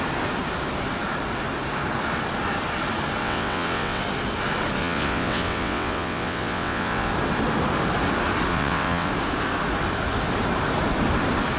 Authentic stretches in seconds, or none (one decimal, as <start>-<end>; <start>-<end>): 0.0-3.2; 4.0-4.8; 7.1-8.5; 9.1-11.6